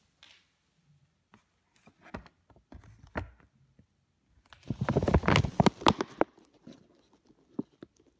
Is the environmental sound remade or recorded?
recorded